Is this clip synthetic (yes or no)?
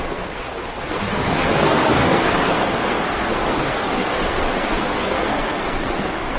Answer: yes